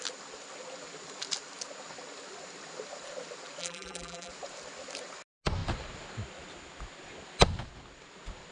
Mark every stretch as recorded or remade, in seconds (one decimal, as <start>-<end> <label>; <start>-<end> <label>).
0.0-3.6 recorded; 3.6-4.3 remade; 4.3-8.5 recorded

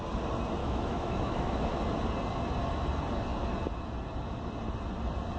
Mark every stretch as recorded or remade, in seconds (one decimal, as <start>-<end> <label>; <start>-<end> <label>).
0.0-0.6 recorded; 0.6-1.8 remade; 1.8-5.4 recorded

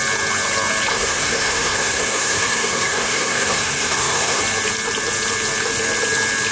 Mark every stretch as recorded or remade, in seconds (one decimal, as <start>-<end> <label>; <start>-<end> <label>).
0.0-0.9 recorded; 0.9-4.4 remade; 4.4-6.5 recorded